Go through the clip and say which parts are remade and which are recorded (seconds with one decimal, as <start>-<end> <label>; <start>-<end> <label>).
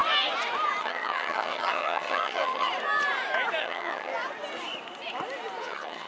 0.0-0.8 recorded; 0.8-2.7 remade; 2.7-3.6 recorded; 3.6-4.1 remade; 4.1-5.6 recorded; 5.6-6.1 remade